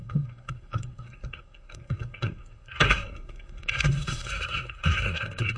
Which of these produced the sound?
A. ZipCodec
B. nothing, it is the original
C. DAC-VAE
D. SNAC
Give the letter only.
D